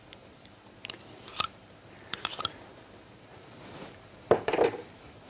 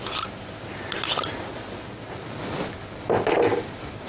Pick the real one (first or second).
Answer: second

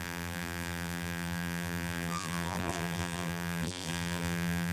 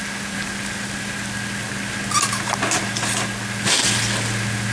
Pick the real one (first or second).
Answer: second